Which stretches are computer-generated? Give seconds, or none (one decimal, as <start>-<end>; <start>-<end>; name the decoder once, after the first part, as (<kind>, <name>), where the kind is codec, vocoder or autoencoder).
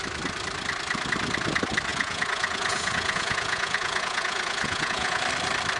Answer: 1.9-5.2 (vocoder, Vocos)